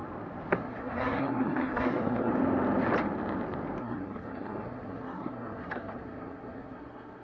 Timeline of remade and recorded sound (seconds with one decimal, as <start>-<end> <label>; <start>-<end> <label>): 0.0-0.5 recorded; 0.5-2.3 remade; 2.3-3.8 recorded; 3.8-7.2 remade